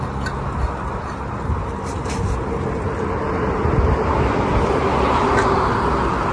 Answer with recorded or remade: recorded